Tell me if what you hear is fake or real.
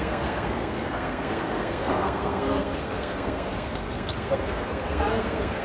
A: fake